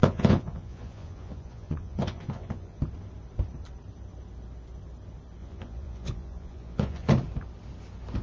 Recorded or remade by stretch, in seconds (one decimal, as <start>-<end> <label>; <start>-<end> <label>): 0.0-2.8 remade; 2.8-5.4 recorded; 5.4-7.1 remade; 7.1-8.2 recorded

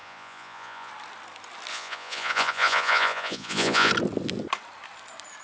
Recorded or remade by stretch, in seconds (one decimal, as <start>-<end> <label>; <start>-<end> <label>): 0.0-0.9 remade; 0.9-1.7 recorded; 1.7-3.9 remade; 3.9-5.4 recorded

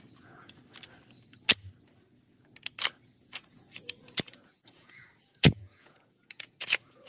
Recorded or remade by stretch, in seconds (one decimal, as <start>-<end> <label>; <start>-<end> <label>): 0.0-0.6 remade; 0.6-3.5 recorded; 3.5-7.1 remade

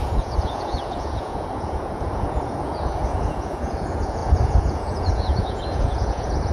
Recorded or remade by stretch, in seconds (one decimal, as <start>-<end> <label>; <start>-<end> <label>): 0.0-6.5 remade

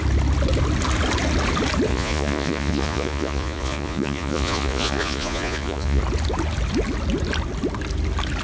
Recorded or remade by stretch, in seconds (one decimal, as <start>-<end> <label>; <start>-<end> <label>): 0.0-1.9 recorded; 1.9-6.0 remade; 6.0-8.4 recorded